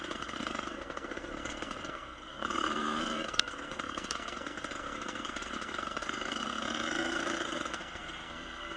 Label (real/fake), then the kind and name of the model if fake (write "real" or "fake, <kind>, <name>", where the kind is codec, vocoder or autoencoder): fake, codec, SNAC